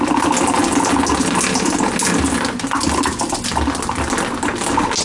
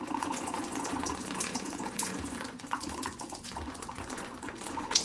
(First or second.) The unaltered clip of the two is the first